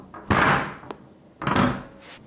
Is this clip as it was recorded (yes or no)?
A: yes